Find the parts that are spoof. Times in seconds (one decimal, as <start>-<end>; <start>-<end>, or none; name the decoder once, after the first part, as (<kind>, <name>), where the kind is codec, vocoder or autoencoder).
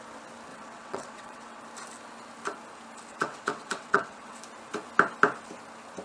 0.5-1.6 (vocoder, WaveNeXt); 3.1-4.4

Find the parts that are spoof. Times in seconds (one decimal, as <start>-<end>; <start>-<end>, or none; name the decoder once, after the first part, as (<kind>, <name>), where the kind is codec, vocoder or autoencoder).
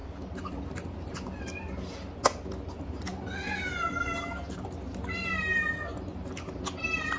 none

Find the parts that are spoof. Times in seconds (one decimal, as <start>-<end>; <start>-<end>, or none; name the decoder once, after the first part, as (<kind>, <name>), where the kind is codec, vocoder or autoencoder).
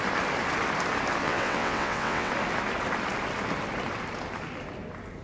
1.2-2.3 (vocoder, WaveNeXt)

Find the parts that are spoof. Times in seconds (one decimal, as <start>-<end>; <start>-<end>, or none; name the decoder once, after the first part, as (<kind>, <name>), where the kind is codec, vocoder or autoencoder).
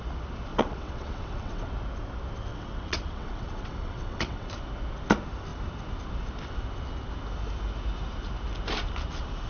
0.5-1.7 (vocoder, WaveNeXt); 2.5-4.5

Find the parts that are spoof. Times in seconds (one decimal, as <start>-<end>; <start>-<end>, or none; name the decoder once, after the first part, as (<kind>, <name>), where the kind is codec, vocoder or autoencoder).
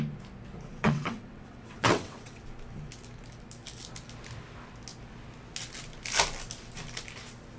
0.7-2.4 (vocoder, WaveNeXt)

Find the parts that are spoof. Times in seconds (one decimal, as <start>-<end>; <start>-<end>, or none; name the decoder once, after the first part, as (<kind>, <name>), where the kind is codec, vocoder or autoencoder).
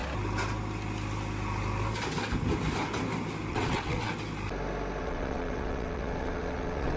3.5-4.1 (vocoder, WaveNeXt); 5.0-7.0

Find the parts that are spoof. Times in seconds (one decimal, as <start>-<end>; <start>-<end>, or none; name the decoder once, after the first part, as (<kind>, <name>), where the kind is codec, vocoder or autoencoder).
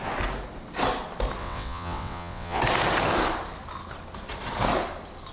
1.4-2.6 (vocoder, WaveNeXt)